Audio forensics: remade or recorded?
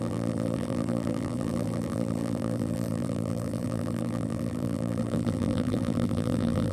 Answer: remade